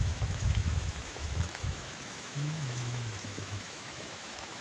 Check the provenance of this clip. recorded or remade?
remade